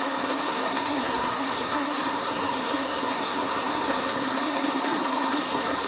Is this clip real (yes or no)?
no